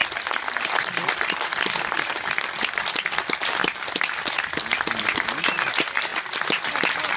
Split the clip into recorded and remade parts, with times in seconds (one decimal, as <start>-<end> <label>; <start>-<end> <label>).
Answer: 0.0-7.2 recorded